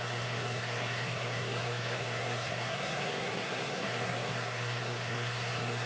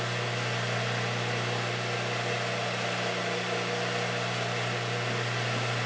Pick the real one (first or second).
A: second